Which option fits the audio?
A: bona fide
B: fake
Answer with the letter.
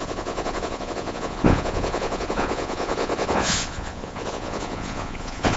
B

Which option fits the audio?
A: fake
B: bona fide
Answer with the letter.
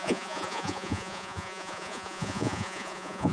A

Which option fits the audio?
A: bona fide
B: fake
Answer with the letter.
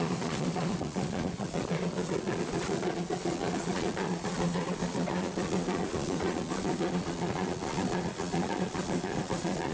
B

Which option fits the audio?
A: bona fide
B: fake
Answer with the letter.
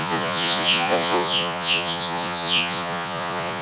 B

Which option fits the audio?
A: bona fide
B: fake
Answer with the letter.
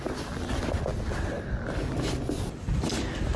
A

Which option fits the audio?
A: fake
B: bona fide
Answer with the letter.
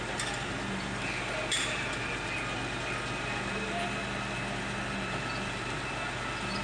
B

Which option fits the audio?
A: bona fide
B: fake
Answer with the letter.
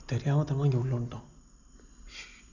A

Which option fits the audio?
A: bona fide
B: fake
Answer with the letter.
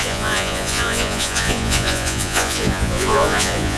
B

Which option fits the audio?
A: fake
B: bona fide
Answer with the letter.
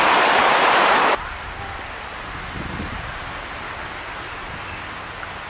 B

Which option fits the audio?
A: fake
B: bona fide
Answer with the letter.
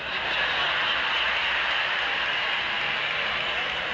B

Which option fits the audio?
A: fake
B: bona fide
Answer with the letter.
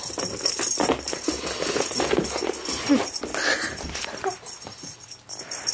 B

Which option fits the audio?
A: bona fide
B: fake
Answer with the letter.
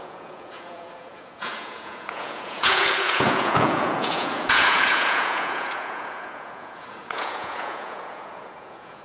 B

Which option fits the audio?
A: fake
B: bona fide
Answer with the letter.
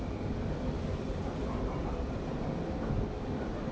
B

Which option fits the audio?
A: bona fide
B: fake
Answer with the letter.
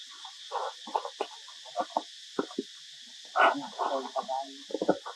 A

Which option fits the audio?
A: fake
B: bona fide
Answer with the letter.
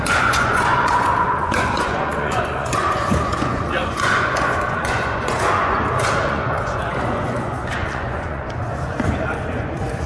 A